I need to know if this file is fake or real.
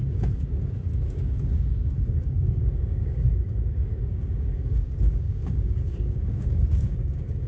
fake